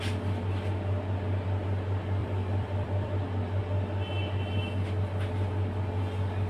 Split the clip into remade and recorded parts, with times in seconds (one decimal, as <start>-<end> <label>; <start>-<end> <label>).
0.0-2.2 recorded; 2.2-3.6 remade; 3.6-6.5 recorded

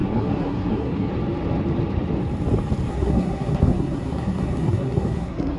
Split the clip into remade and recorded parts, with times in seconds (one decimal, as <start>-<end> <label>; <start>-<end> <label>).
0.0-1.1 remade; 1.1-2.9 recorded; 2.9-5.6 remade